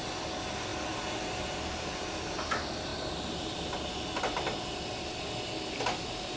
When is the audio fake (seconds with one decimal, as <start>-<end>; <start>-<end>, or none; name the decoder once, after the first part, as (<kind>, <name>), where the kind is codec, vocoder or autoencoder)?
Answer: none

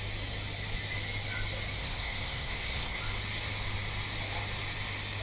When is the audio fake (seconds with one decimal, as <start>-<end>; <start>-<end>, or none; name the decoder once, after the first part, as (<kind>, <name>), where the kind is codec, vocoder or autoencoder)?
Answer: 1.8-3.0 (codec, SNAC)

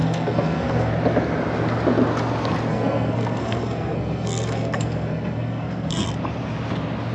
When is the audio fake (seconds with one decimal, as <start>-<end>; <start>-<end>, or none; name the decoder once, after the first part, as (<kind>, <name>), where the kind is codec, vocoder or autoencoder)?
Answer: 0.0-0.9 (codec, SNAC); 2.7-6.1

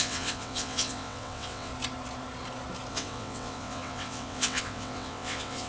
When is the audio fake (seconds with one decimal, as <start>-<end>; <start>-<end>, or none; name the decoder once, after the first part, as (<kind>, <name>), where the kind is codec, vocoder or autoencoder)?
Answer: 0.0-1.7 (vocoder, WaveNeXt); 2.9-5.7

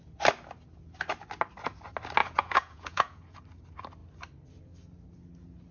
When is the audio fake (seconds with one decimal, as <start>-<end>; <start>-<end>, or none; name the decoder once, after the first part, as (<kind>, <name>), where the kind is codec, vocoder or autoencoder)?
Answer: 2.2-3.4 (vocoder, Vocos)

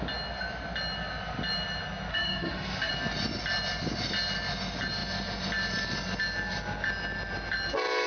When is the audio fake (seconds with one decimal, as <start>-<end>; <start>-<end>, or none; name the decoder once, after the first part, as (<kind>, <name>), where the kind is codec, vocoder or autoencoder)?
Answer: 2.1-2.9 (autoencoder, DAC-VAE)